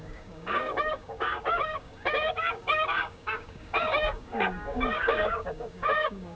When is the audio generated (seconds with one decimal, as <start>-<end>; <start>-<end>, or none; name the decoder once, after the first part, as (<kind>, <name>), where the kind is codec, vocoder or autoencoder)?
0.0-6.4 (codec, DAC)

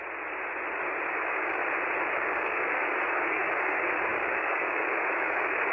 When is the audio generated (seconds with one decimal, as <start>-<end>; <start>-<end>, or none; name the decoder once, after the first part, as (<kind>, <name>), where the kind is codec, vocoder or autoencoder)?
1.1-1.6 (codec, DAC); 2.1-5.7

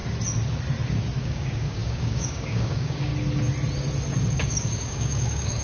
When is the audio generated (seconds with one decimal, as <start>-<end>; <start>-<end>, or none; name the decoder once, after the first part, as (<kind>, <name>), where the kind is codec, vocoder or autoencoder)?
1.2-3.1 (codec, DAC); 4.3-5.6

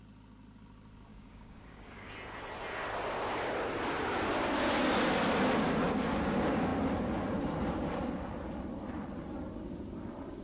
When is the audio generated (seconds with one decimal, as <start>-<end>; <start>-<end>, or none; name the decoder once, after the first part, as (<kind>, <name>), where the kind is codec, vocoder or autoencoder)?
1.1-2.1 (codec, DAC)

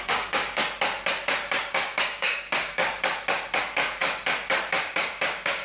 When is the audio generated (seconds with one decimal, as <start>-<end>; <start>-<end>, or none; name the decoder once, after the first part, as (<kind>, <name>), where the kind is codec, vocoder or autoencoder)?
0.0-0.6 (codec, DAC); 1.7-2.8; 3.6-4.0; 4.7-5.6

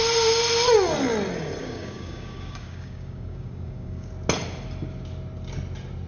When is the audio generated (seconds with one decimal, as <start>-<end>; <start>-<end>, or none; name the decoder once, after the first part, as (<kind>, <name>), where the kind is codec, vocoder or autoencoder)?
1.6-4.1 (codec, DAC)

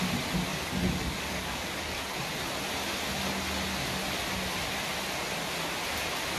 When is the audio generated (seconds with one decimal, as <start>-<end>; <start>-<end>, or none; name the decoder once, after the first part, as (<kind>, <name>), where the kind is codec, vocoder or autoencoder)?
0.5-2.0 (codec, DAC)